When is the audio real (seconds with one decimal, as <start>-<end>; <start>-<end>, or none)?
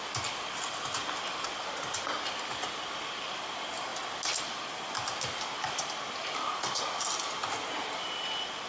0.0-8.7